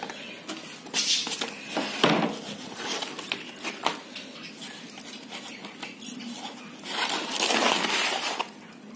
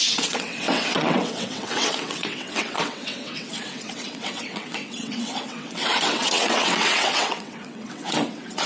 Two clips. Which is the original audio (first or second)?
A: first